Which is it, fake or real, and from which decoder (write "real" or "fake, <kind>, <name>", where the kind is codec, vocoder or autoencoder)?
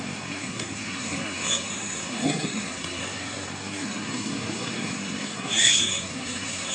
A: fake, codec, SNAC